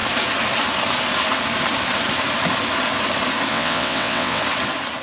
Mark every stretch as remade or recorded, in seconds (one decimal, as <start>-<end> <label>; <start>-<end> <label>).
0.0-3.5 recorded; 3.5-4.4 remade; 4.4-5.0 recorded